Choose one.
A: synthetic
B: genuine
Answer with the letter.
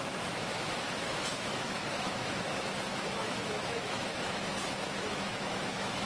A